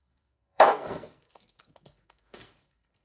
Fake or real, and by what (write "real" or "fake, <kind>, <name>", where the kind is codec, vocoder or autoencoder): fake, codec, SNAC